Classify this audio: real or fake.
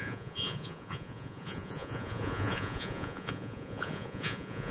fake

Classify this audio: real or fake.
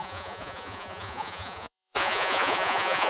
fake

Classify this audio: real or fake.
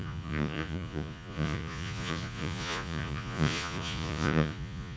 fake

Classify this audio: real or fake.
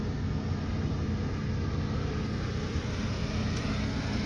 real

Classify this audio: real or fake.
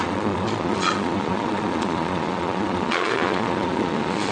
fake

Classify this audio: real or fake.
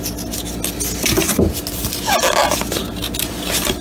real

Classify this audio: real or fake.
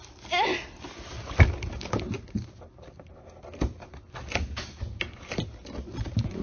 real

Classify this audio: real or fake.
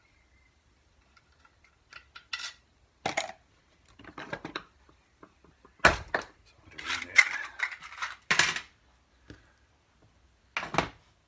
real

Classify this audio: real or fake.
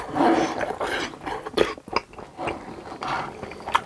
real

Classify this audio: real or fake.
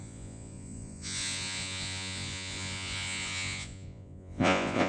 fake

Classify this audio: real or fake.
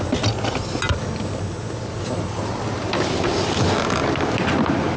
real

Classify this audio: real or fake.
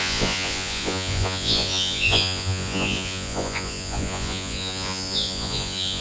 fake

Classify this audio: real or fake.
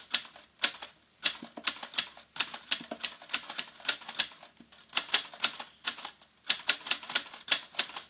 real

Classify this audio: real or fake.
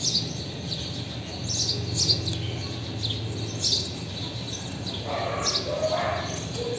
real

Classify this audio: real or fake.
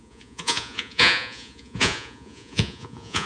fake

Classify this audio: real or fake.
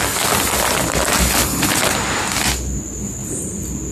real